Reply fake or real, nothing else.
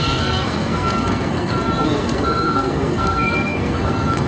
fake